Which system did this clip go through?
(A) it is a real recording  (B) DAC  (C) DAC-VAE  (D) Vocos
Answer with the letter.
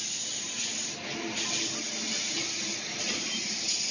A